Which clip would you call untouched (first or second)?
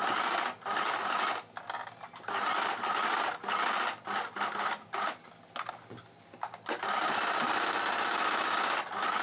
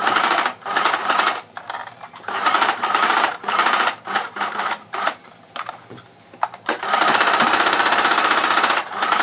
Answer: first